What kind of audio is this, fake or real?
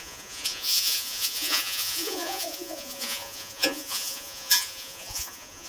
fake